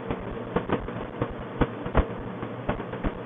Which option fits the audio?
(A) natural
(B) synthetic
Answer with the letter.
A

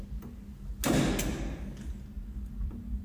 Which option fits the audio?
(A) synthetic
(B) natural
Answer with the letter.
B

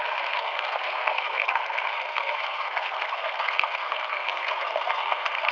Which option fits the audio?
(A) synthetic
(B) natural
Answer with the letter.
A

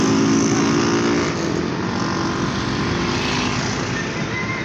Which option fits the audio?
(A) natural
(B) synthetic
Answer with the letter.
A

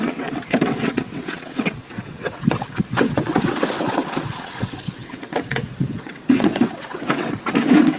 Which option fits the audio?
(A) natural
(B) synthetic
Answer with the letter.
B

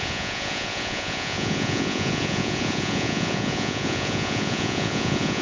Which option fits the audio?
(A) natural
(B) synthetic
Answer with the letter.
B